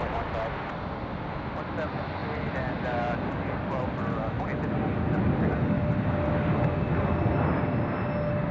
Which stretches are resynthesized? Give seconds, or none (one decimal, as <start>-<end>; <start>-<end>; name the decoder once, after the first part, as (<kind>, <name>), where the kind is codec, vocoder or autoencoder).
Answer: none